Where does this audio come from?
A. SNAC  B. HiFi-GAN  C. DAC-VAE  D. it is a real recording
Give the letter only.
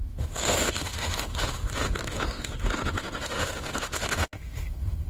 C